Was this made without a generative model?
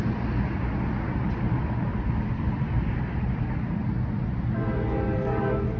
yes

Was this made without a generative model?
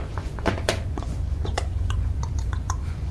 no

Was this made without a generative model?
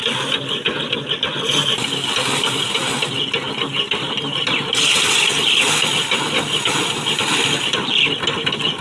yes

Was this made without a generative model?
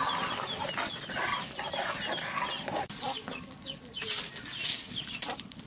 yes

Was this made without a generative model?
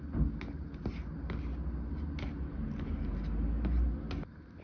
yes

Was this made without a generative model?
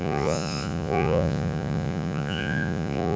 no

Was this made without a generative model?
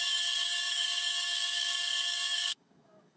no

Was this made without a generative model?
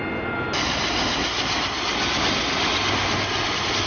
yes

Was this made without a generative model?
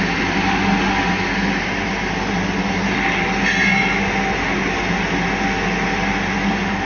yes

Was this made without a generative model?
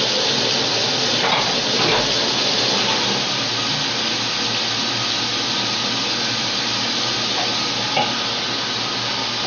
yes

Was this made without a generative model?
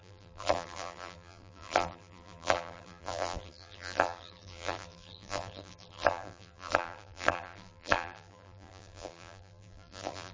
no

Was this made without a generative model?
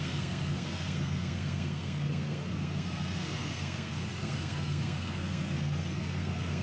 no